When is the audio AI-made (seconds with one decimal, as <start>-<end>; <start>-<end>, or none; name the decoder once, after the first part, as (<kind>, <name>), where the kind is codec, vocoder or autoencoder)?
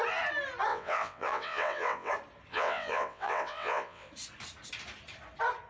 0.7-2.1 (vocoder, WaveNeXt); 2.5-4.1